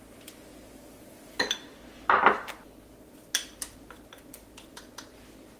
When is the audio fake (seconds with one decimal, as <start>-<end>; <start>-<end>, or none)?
none